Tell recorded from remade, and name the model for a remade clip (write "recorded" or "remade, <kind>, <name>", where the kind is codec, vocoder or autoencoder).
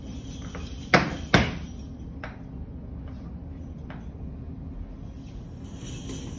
recorded